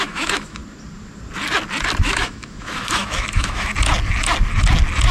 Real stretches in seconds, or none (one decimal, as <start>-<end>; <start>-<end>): 0.6-2.0; 3.7-5.1

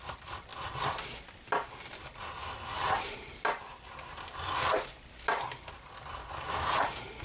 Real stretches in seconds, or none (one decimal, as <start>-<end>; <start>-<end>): none